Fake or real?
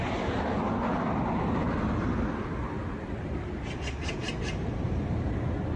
real